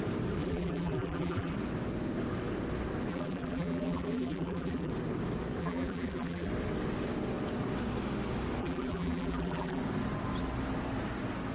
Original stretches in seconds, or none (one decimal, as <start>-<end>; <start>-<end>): 0.0-0.4; 1.5-3.1; 4.9-5.6; 6.5-8.6; 9.8-11.5